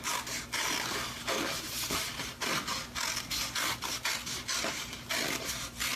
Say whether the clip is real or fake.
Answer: real